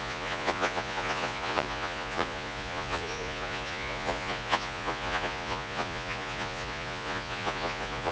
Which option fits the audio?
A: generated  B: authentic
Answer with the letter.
A